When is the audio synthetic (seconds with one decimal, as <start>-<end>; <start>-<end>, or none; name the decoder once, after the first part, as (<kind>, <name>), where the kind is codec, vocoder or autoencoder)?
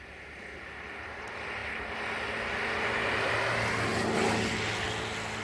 none